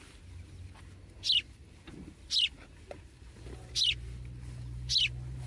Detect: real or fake real